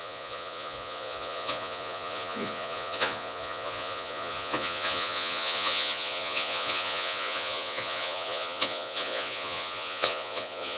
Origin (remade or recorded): remade